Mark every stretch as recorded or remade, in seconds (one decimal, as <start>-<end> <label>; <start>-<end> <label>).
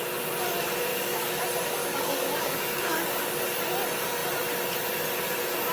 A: 0.0-0.9 recorded; 0.9-1.4 remade; 1.4-1.8 recorded; 1.8-3.4 remade; 3.4-5.7 recorded